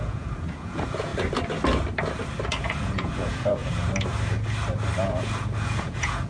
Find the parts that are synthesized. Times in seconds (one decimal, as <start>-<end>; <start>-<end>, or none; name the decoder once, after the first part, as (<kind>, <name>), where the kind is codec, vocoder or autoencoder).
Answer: 0.0-1.1 (vocoder, Vocos); 2.6-3.6; 5.0-6.3